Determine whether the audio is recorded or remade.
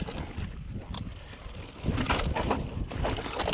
recorded